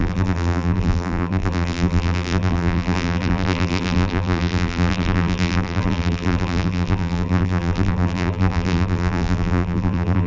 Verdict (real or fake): fake